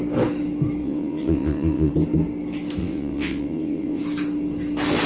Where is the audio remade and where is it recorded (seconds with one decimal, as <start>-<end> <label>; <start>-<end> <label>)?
0.0-0.8 recorded; 0.8-1.9 remade; 1.9-2.8 recorded; 2.8-4.0 remade; 4.0-5.1 recorded